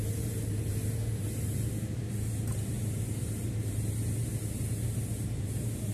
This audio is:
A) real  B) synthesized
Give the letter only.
B